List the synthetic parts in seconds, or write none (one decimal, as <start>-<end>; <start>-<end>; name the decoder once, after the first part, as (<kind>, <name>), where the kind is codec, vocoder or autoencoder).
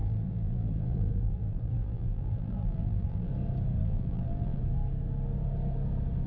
0.0-3.3 (vocoder, BigVGAN v2); 3.8-4.6